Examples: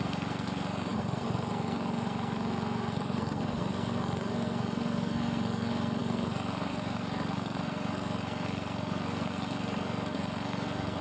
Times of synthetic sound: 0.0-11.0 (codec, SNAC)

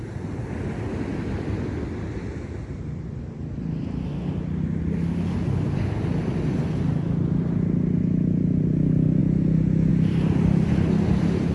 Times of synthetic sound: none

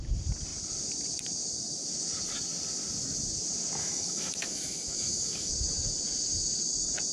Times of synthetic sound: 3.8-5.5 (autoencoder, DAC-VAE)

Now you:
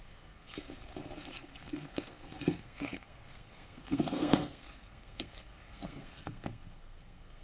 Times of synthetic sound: 0.0-7.4 (codec, SNAC)

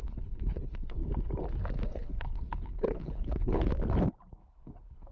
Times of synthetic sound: 0.0-1.0 (codec, HILCodec); 1.9-3.7; 4.4-5.1

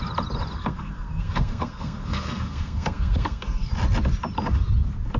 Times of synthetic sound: 0.6-3.7 (codec, SNAC)

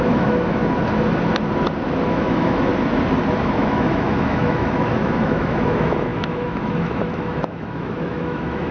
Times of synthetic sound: 0.0-0.6 (autoencoder, DAC-VAE); 2.1-2.7; 3.4-8.7

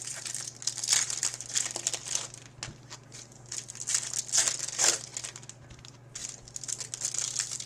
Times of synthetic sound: none